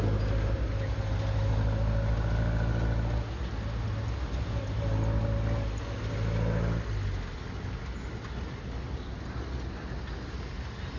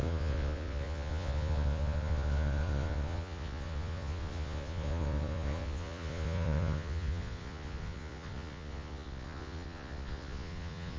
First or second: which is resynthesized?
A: second